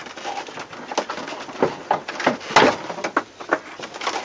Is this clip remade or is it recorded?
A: recorded